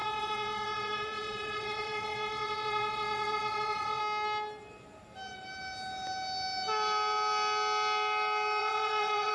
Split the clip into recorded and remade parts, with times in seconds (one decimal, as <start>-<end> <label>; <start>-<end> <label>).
0.0-4.0 remade; 4.0-8.6 recorded; 8.6-9.3 remade